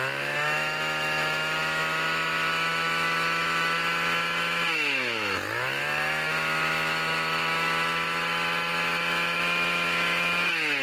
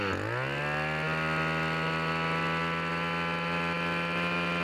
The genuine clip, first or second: second